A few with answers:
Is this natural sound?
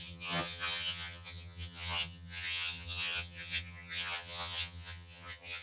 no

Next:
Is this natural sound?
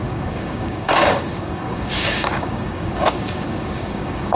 no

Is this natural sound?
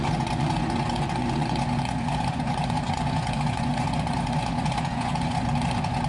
no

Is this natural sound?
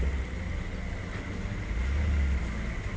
yes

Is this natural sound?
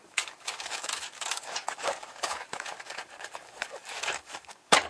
no